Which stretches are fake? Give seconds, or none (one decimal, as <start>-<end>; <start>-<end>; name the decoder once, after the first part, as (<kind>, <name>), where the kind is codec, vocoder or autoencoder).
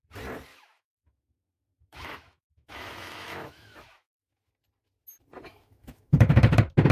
0.5-4.5 (autoencoder, DAC-VAE); 5.5-6.4